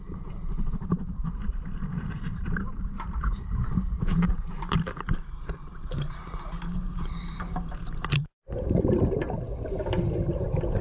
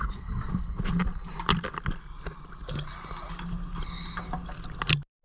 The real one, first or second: second